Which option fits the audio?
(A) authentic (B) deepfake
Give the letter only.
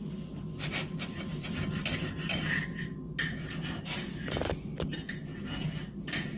A